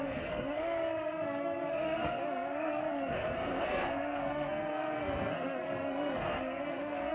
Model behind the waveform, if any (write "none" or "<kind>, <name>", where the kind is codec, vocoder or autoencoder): codec, SNAC